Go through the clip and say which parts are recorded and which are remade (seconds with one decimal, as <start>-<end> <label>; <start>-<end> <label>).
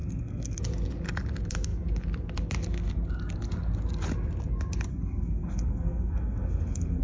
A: 0.0-0.6 remade; 0.6-4.9 recorded; 4.9-7.0 remade